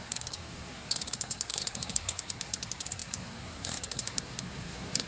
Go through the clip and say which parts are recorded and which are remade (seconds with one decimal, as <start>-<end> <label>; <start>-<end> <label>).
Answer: 0.0-5.1 remade